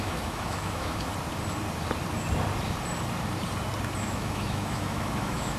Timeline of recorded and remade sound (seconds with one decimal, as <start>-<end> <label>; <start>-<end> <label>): 0.0-1.1 remade; 1.1-4.0 recorded; 4.0-5.6 remade